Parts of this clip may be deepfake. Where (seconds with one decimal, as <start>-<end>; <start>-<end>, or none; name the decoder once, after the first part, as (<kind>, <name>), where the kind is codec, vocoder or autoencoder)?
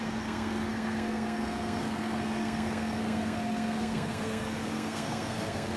0.0-5.8 (codec, SNAC)